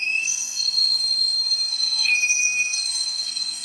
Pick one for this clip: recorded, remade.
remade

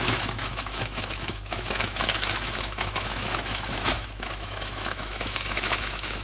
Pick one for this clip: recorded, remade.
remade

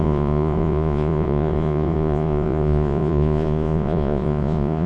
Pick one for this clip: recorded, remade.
remade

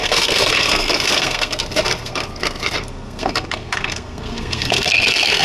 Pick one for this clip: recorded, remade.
remade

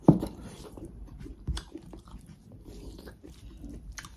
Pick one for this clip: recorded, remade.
remade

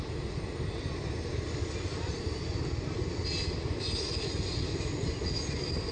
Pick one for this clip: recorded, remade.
recorded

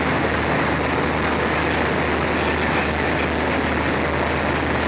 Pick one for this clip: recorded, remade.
recorded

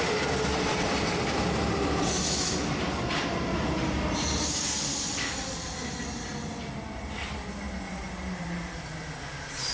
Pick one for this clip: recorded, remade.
recorded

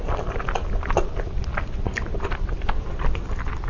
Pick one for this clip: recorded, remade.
recorded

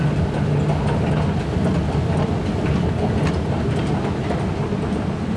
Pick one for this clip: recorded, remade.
recorded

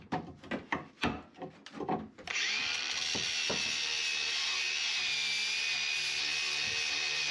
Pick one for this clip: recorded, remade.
recorded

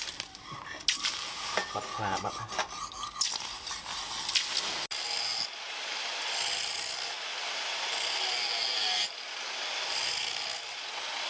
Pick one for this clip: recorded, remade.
recorded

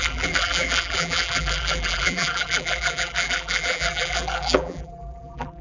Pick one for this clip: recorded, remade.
remade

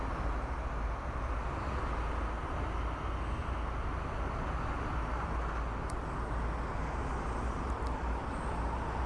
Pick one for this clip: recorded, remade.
recorded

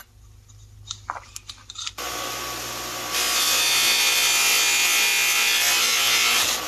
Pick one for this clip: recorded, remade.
recorded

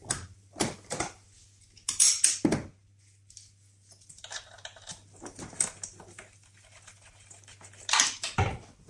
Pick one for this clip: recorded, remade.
recorded